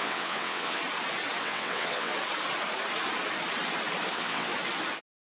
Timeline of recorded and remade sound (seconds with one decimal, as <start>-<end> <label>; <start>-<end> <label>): 0.0-0.8 remade; 0.8-1.4 recorded; 1.4-2.1 remade; 2.1-4.1 recorded; 4.1-4.5 remade; 4.5-5.3 recorded